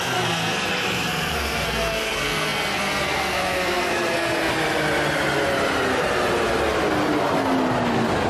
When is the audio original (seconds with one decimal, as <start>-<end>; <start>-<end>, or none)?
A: 4.5-8.3

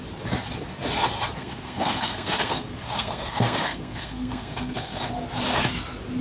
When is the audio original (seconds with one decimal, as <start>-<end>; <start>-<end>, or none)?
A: 0.0-1.4; 5.1-6.2

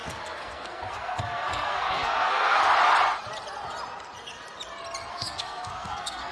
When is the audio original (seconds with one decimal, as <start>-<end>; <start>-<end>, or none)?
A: 2.6-5.1

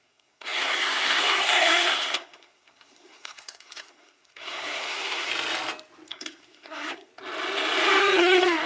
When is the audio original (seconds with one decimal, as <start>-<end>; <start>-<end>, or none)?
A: 5.3-6.1; 7.1-8.0

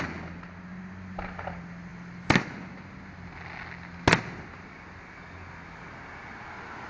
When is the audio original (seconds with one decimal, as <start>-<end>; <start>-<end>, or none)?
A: 0.0-6.9

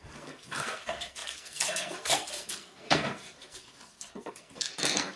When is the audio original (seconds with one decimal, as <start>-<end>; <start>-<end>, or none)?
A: none

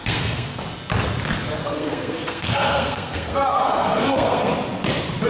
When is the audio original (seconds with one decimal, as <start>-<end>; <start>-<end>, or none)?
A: 0.6-1.6; 4.5-5.3